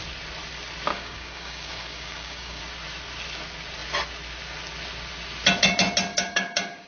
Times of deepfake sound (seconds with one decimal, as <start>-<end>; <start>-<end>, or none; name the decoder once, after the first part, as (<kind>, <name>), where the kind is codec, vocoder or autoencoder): 0.9-2.6 (codec, DAC); 6.1-6.9